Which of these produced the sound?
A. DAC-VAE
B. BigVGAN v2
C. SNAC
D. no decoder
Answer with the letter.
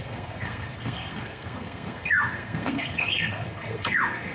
C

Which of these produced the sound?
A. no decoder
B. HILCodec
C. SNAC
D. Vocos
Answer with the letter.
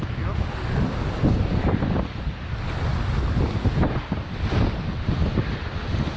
A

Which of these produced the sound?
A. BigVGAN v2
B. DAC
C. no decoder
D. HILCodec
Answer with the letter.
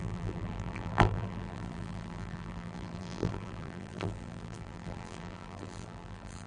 A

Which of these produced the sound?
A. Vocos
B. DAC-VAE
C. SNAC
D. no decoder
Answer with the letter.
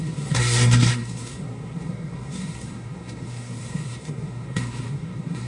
C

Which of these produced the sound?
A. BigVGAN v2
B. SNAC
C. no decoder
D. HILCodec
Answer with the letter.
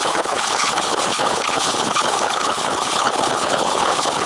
D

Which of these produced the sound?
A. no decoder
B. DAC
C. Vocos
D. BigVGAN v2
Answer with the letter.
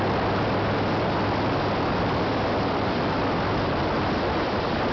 A